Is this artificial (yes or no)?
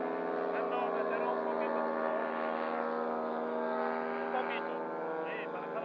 no